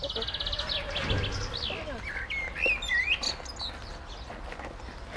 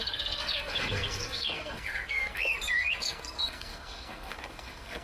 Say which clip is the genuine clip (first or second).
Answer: first